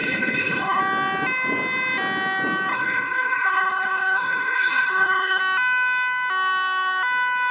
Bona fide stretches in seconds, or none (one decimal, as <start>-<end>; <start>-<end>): 0.8-2.7; 5.4-7.5